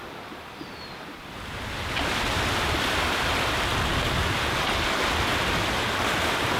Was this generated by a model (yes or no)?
no